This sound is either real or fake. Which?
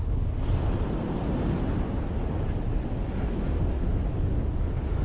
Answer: real